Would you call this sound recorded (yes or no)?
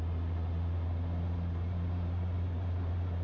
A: yes